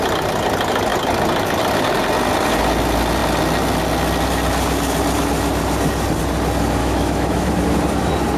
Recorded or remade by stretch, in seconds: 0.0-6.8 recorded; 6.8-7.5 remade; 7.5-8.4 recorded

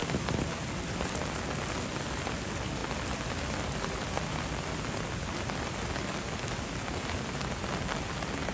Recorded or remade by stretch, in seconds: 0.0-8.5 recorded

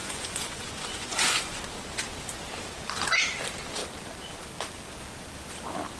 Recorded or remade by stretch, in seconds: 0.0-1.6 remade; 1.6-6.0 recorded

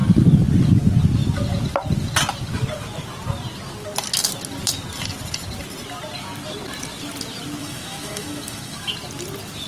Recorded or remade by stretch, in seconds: 0.0-7.6 recorded; 7.6-8.9 remade; 8.9-9.7 recorded

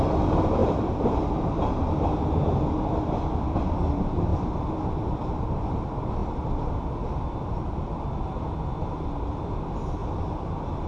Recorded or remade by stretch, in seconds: 0.0-0.6 recorded; 0.6-1.8 remade; 1.8-10.0 recorded; 10.0-10.9 remade

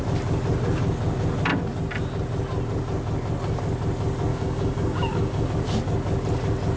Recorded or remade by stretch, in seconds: 0.0-4.3 recorded; 4.3-5.5 remade; 5.5-6.8 recorded

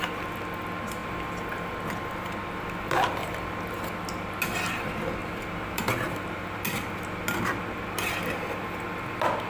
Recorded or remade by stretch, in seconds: 0.0-5.2 recorded; 5.2-6.6 remade; 6.6-9.5 recorded